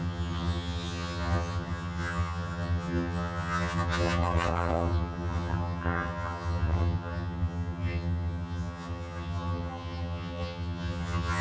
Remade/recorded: remade